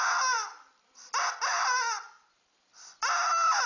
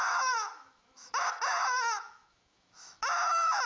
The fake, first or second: second